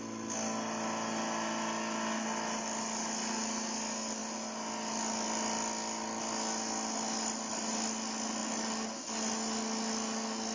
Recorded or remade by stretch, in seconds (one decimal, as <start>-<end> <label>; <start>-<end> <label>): 0.0-10.5 recorded